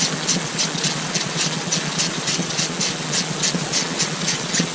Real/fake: fake